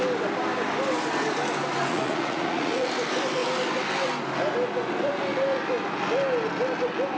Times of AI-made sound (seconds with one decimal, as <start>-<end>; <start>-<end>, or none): 1.9-2.9